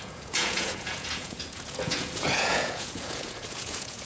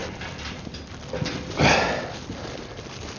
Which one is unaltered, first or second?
second